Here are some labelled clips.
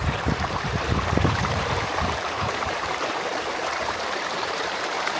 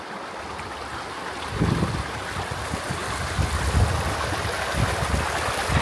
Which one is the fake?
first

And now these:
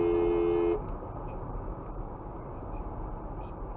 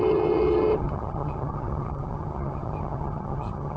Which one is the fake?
second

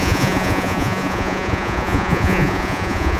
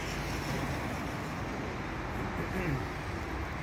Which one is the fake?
first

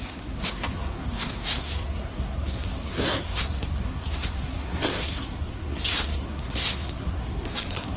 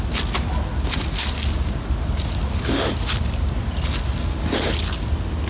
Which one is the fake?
first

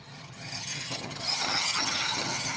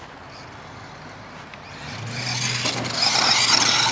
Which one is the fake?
first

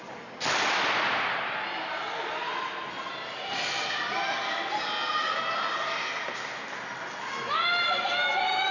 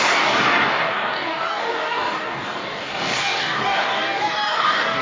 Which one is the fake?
second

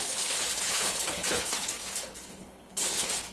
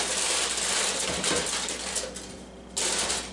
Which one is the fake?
first